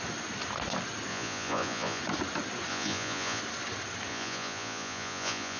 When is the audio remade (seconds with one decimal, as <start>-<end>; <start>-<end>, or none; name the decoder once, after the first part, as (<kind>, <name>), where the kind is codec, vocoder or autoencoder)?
1.1-2.0 (vocoder, Vocos); 2.7-3.4; 4.1-5.6